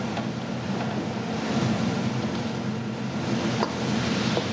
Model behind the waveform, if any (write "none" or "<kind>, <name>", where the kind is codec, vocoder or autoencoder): none